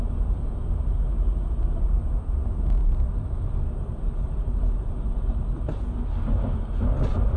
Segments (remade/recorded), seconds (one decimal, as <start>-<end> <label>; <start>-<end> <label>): 0.0-2.8 recorded; 2.8-6.8 remade; 6.8-7.4 recorded